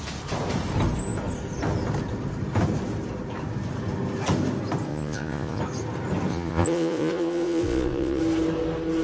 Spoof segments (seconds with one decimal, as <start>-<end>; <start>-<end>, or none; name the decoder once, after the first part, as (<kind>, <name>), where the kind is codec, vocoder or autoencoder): 4.9-5.6 (vocoder, Vocos); 6.3-8.2